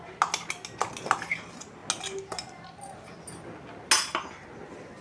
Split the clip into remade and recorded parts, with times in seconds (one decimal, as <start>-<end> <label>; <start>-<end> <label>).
0.0-5.0 recorded